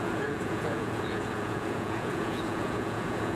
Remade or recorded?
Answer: remade